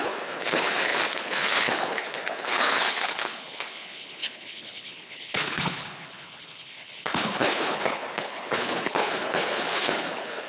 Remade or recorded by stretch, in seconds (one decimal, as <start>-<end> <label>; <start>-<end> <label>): 0.0-10.5 remade